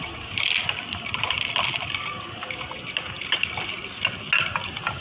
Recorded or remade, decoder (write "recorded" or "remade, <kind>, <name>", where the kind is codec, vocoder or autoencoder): recorded